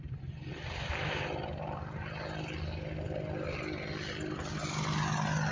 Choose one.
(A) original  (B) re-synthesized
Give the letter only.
A